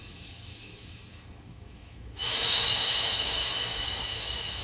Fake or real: fake